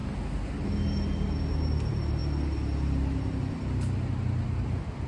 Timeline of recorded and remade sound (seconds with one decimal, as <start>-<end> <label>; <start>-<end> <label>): 0.0-5.1 recorded

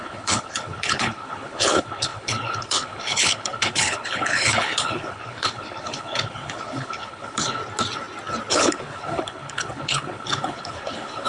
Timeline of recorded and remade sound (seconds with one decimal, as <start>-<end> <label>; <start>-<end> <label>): 0.0-7.6 remade; 7.6-8.5 recorded; 8.5-11.3 remade

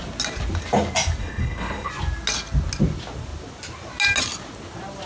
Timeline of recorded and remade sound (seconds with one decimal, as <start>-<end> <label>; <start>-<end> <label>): 0.0-1.2 recorded; 1.2-1.9 remade; 1.9-5.1 recorded

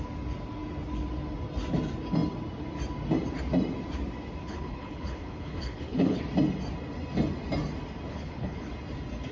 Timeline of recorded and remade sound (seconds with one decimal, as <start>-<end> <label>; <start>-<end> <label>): 0.0-4.4 recorded; 4.4-6.2 remade; 6.2-8.1 recorded; 8.1-8.7 remade; 8.7-9.3 recorded

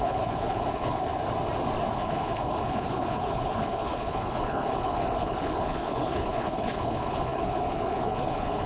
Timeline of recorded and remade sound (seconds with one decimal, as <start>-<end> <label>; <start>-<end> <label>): 0.0-1.1 remade; 1.1-1.9 recorded; 1.9-8.7 remade

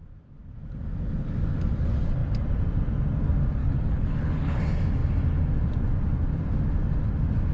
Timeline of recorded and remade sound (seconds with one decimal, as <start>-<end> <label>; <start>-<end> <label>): 0.0-3.6 recorded; 3.6-4.6 remade; 4.6-7.5 recorded

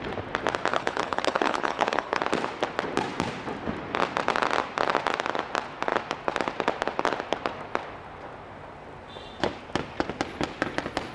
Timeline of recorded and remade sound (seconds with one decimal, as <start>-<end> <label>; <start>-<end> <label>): 0.0-0.7 recorded; 0.7-2.2 remade; 2.2-11.1 recorded